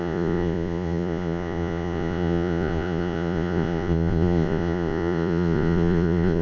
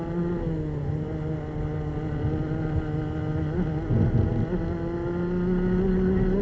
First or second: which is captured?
second